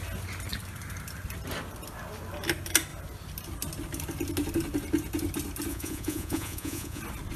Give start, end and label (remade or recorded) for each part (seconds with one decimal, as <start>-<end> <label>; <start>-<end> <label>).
0.0-5.7 recorded; 5.7-7.0 remade; 7.0-7.4 recorded